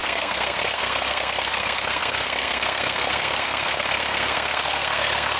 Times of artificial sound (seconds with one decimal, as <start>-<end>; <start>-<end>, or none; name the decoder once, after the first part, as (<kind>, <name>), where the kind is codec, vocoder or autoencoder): 0.0-5.4 (codec, SNAC)